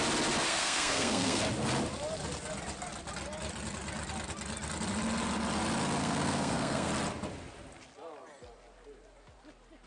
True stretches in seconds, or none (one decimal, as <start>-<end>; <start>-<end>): 0.0-0.5; 1.4-6.0; 6.9-9.9